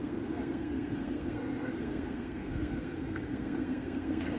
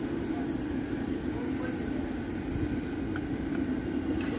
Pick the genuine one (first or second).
second